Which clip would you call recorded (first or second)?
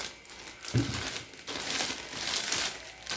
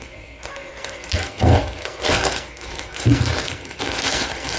first